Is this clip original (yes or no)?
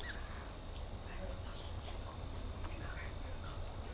yes